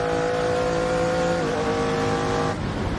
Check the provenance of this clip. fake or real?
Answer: real